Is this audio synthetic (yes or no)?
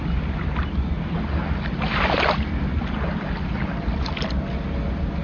no